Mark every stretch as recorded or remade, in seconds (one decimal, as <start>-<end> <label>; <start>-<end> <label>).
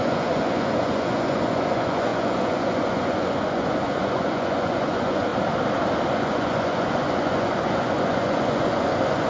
0.0-5.3 remade; 5.3-6.1 recorded; 6.1-9.3 remade